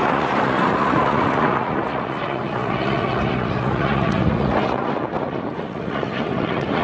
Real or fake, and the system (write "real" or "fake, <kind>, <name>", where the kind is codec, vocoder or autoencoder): fake, vocoder, Vocos